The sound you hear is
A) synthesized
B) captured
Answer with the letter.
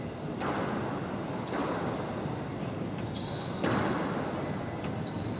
B